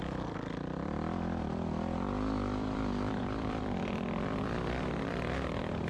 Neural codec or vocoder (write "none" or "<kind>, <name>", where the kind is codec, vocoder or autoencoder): vocoder, BigVGAN v2